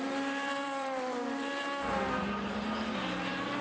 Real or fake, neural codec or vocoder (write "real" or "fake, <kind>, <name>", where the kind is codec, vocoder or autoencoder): fake, vocoder, BigVGAN v2